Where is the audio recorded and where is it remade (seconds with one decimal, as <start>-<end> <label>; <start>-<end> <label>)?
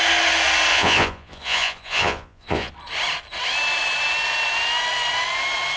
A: 0.0-0.7 recorded; 0.7-2.7 remade; 2.7-5.8 recorded